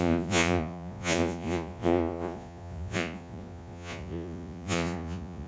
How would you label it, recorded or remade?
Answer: remade